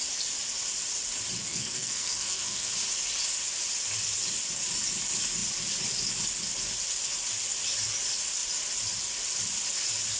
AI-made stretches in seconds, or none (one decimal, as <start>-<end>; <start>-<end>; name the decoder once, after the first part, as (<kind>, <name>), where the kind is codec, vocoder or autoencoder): 1.5-2.7 (codec, SNAC)